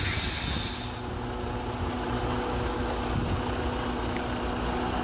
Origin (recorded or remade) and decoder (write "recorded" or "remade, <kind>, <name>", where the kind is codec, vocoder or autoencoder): recorded